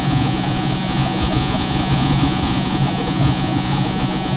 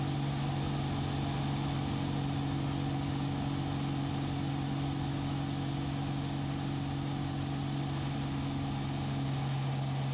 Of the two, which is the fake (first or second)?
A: first